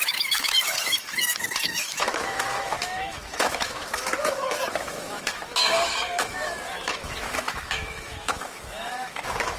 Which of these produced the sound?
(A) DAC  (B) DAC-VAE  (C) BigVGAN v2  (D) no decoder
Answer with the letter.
B